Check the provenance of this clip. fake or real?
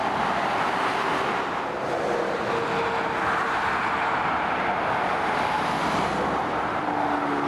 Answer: real